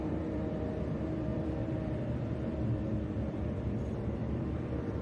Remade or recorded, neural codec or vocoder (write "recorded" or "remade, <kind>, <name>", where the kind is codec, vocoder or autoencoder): remade, vocoder, BigVGAN v2